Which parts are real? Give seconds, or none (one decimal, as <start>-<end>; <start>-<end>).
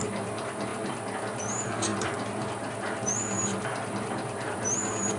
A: 0.7-1.2